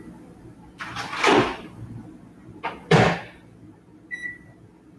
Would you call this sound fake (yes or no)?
yes